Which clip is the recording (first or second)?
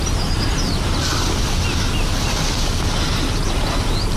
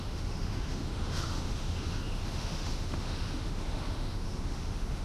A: first